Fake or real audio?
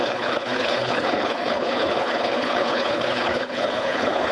fake